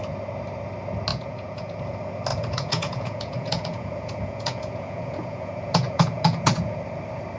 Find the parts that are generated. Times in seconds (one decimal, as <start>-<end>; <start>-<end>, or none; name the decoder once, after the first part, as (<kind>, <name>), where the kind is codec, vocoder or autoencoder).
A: 1.1-1.8 (vocoder, Vocos); 2.3-6.7